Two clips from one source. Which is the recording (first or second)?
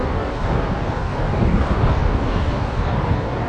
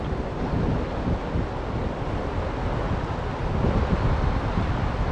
second